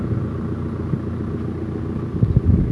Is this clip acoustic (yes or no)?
yes